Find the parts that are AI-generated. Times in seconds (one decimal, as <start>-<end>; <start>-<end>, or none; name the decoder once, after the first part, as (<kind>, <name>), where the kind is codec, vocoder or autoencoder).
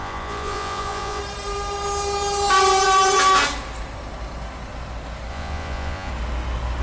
0.0-1.2 (vocoder, Vocos); 5.3-6.1